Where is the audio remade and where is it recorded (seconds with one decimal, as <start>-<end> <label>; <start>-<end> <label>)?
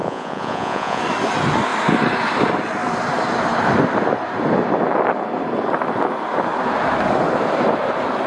0.0-1.0 remade; 1.0-8.3 recorded